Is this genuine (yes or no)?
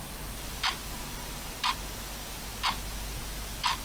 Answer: yes